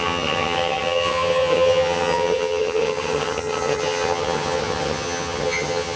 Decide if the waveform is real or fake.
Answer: fake